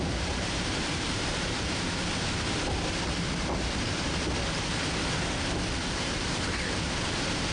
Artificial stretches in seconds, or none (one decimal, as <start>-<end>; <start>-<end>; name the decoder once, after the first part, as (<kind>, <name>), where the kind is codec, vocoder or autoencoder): 0.0-1.3 (vocoder, BigVGAN v2); 5.8-7.5